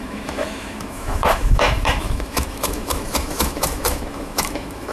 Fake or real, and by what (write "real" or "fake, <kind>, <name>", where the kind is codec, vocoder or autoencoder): fake, autoencoder, DAC-VAE